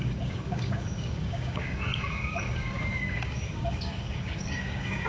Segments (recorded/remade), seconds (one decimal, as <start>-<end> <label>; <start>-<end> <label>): 0.0-5.1 remade